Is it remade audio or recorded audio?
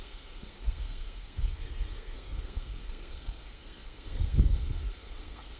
remade